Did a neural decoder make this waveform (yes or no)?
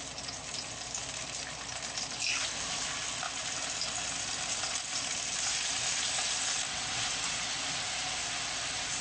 no